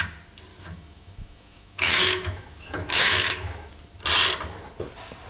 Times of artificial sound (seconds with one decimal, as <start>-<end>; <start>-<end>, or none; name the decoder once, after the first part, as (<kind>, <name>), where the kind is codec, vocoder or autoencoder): 0.5-3.7 (autoencoder, DAC-VAE)